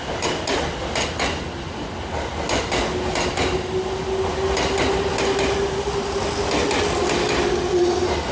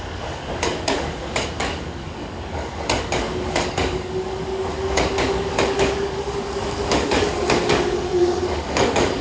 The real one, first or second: first